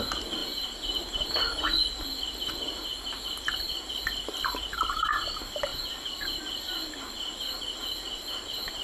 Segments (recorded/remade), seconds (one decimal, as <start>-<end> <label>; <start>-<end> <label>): 0.0-5.7 recorded; 5.7-6.4 remade; 6.4-8.8 recorded